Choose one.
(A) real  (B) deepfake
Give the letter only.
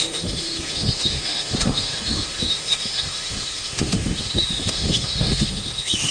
B